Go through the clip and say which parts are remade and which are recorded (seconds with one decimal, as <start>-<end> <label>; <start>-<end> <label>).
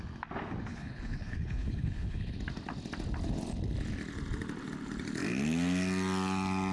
0.0-0.7 recorded; 0.7-2.3 remade; 2.3-6.7 recorded